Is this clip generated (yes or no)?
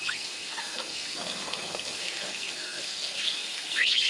yes